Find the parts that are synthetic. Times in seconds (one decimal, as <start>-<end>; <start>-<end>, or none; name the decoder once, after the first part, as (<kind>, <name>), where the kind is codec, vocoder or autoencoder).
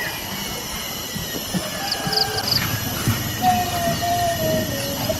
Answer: none